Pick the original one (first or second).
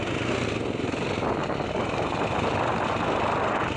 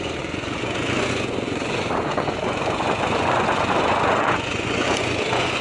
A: first